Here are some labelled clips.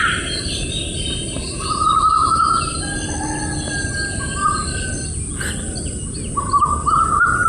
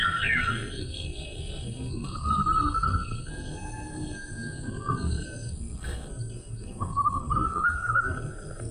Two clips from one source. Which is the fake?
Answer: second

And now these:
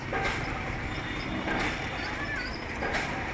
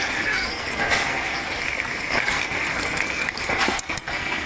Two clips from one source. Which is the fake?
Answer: second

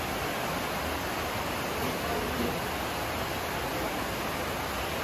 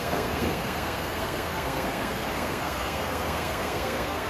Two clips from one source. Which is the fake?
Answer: second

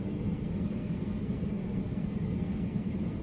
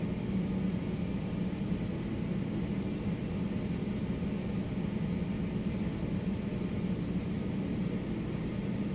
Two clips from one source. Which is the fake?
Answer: first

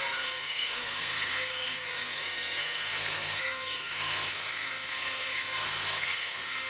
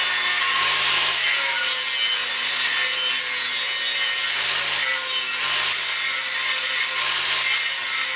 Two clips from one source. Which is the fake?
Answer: first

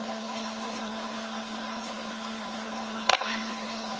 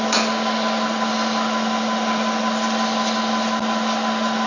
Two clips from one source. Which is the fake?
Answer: first